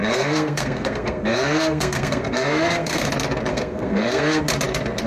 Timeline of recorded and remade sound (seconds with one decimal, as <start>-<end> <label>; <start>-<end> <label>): 0.0-3.1 remade; 3.1-3.5 recorded; 3.5-4.4 remade; 4.4-5.1 recorded